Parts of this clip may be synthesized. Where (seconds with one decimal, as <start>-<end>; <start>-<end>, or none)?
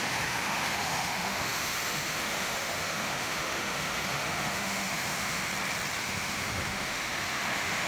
0.0-5.5; 6.0-7.9